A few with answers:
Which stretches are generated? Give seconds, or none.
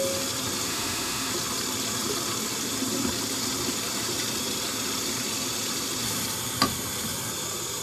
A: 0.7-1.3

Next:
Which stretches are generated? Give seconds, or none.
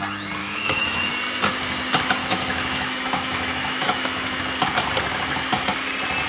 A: 0.4-1.1; 2.2-4.4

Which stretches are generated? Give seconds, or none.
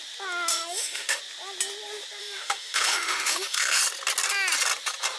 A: 0.5-1.2; 2.2-3.8